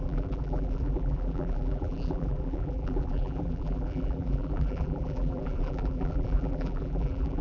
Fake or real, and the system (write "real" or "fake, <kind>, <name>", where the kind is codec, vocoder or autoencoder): fake, vocoder, BigVGAN v2